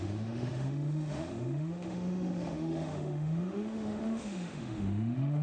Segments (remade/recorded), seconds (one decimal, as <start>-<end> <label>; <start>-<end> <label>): 0.0-5.4 remade